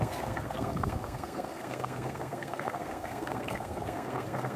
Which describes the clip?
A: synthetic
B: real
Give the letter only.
A